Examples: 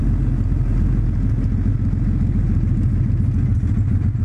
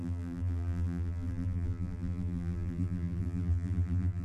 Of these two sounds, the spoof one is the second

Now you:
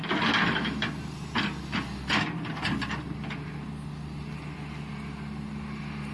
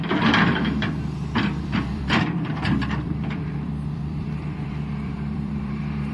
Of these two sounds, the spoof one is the second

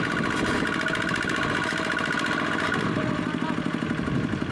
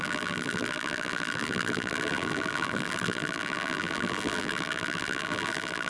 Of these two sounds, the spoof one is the second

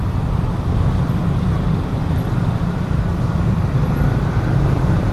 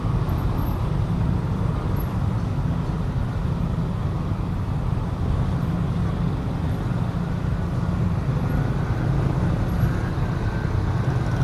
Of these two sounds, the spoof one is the first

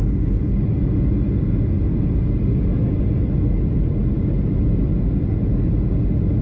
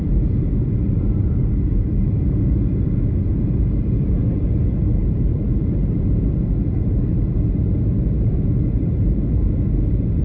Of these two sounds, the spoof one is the second